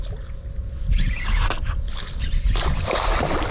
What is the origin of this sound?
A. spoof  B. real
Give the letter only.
B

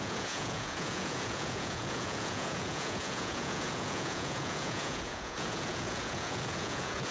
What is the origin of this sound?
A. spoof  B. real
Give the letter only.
A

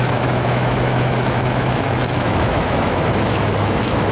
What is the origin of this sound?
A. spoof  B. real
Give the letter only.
A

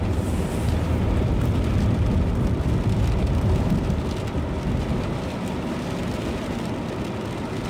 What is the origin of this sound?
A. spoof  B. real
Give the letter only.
B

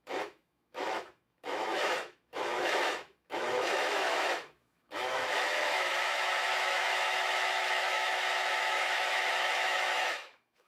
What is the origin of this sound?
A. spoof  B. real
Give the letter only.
A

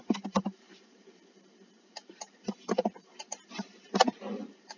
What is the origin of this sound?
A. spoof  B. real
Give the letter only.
A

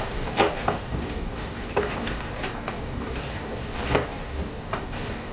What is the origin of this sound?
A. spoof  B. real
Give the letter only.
A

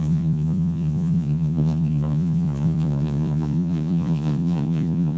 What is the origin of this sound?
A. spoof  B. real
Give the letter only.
A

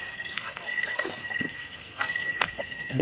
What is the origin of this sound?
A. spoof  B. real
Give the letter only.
A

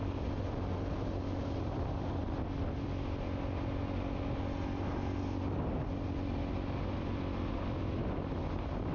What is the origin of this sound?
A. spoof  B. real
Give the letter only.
B